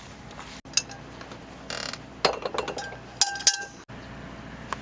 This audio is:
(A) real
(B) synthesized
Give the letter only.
A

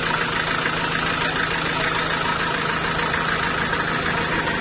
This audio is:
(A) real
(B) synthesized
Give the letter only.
A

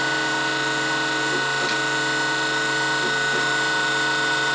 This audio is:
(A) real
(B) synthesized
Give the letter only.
A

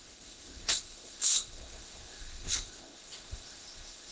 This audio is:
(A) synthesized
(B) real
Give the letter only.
A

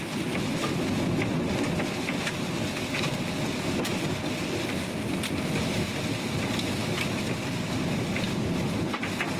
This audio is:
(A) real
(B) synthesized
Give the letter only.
A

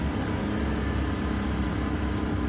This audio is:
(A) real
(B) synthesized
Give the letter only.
A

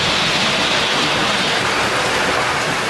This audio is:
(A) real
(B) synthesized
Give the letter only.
A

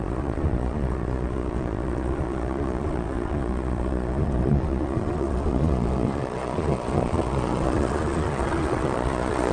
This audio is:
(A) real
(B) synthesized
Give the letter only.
B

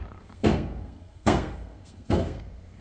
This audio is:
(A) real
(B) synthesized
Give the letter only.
B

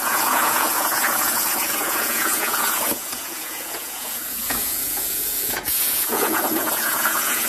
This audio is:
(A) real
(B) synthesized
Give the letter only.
B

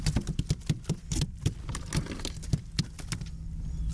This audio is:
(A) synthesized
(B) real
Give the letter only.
B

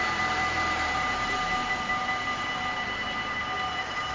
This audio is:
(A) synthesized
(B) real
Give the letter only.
A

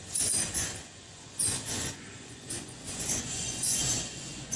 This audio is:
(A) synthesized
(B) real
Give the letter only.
A